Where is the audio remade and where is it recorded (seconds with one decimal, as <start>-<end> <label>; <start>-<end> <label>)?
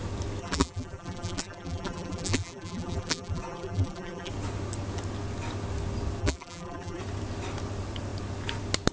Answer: 0.0-0.4 recorded; 0.4-4.3 remade; 4.3-6.2 recorded; 6.2-7.0 remade; 7.0-8.9 recorded